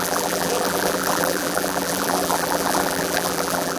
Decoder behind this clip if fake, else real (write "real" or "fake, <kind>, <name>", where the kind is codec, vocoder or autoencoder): fake, vocoder, BigVGAN v2